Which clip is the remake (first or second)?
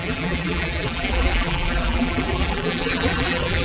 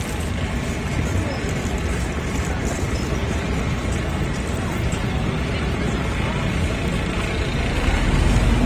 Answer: first